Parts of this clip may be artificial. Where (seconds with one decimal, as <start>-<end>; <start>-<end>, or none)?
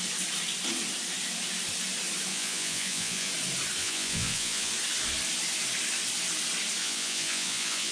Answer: 2.3-3.3; 3.8-4.7; 6.8-7.9